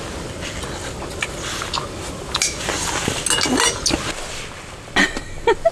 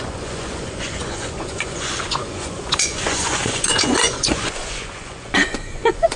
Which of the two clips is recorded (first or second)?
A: first